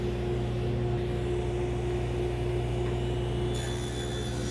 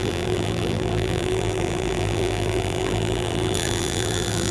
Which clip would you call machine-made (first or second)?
second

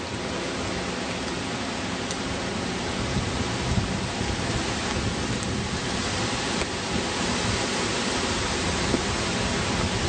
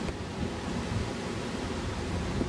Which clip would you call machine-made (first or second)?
second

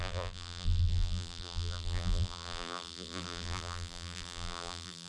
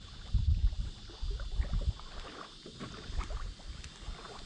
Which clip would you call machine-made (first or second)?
first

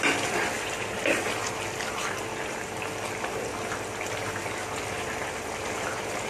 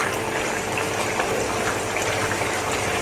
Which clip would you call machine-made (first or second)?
second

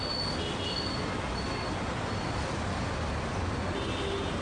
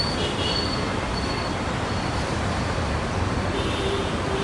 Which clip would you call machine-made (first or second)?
second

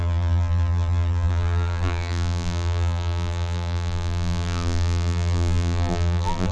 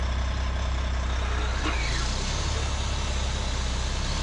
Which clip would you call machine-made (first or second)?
first